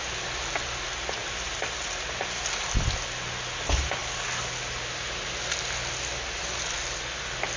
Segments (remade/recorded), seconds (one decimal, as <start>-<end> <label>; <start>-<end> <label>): 0.0-7.6 recorded